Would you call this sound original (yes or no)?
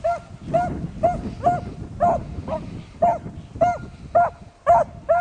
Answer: yes